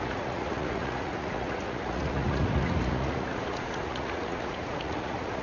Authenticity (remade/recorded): remade